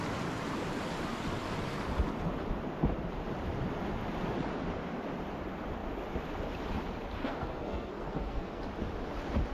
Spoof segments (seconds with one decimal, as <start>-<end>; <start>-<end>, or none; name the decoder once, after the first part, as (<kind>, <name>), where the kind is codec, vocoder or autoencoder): 7.2-8.6 (codec, SNAC)